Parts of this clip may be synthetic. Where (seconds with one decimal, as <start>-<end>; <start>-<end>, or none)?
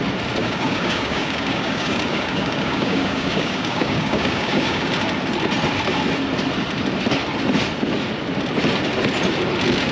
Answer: 0.4-4.9